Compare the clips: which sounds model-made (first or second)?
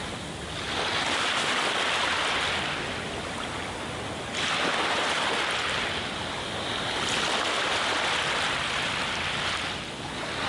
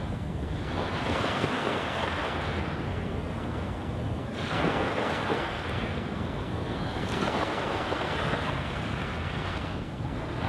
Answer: second